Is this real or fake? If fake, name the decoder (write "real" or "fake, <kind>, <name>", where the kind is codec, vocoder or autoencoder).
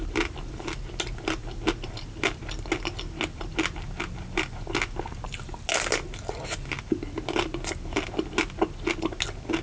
real